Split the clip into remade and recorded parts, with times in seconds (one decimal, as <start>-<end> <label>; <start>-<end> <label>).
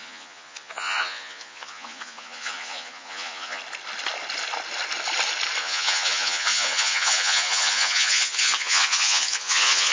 0.0-3.6 remade; 3.6-5.6 recorded; 5.6-9.9 remade